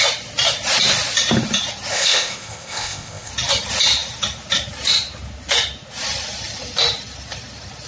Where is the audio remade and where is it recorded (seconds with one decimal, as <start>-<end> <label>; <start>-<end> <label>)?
0.0-1.9 recorded; 1.9-3.3 remade; 3.3-7.9 recorded